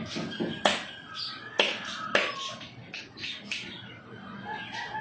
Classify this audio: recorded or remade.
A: recorded